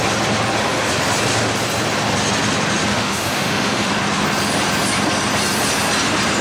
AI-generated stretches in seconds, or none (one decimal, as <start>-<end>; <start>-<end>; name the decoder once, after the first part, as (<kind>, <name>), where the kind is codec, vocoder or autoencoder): 2.9-3.9 (autoencoder, DAC-VAE)